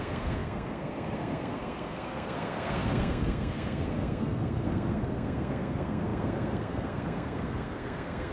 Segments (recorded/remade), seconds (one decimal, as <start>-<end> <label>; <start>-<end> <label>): 0.0-8.3 remade